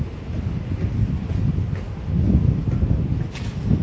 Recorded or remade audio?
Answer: recorded